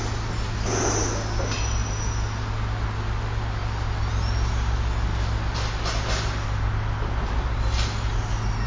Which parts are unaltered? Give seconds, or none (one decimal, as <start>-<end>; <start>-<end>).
0.0-8.7